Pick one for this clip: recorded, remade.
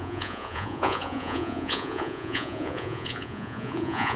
remade